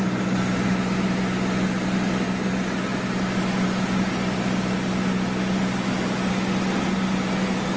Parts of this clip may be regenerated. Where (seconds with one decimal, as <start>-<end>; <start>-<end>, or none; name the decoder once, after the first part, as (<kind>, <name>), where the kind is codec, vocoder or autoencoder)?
none